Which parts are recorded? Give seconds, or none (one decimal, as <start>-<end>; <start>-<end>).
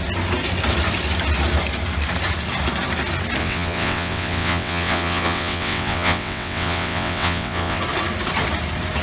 0.0-3.4; 7.8-9.0